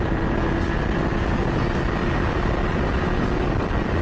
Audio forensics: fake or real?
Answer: real